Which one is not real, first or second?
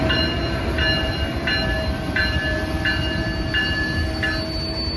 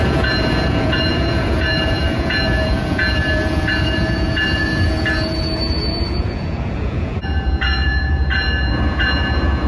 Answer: second